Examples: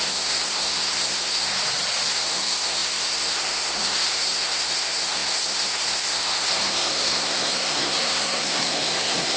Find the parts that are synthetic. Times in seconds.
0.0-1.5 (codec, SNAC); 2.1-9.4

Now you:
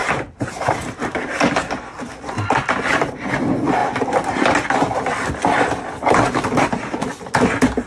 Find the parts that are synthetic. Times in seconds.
0.0-1.1 (vocoder, BigVGAN v2)

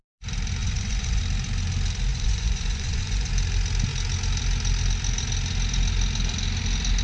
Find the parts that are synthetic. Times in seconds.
0.6-1.2 (vocoder, Vocos); 2.1-3.3